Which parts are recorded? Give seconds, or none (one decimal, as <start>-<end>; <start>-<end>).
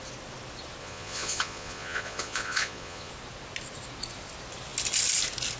0.0-0.8; 3.1-5.6